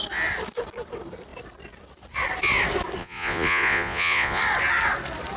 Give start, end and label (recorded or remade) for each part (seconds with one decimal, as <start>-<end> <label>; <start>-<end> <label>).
0.0-3.0 recorded; 3.0-4.4 remade; 4.4-5.4 recorded